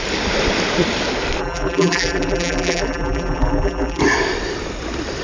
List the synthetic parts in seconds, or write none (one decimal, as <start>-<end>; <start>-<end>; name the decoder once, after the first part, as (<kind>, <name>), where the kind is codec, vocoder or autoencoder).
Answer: 1.4-4.0 (vocoder, BigVGAN v2)